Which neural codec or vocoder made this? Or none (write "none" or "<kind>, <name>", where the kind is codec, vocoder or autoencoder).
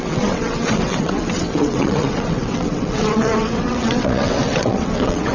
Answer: vocoder, WaveNeXt